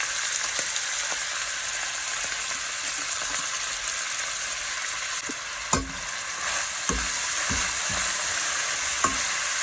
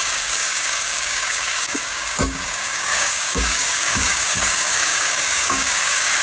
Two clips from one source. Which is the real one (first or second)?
first